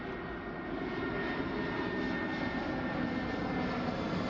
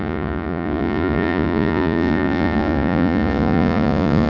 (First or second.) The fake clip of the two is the second